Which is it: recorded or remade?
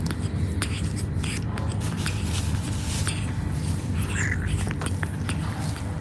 recorded